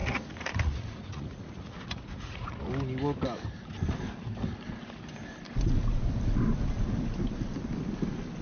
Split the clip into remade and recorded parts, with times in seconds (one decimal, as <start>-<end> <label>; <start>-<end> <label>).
0.0-2.7 remade; 2.7-8.4 recorded